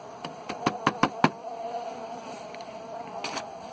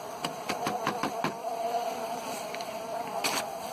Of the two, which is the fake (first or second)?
second